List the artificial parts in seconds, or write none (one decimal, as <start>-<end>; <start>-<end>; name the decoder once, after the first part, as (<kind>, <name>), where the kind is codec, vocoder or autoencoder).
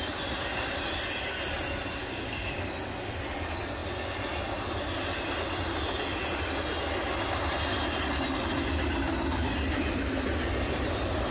2.0-2.7 (codec, DAC)